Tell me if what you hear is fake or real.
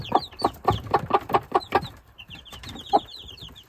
fake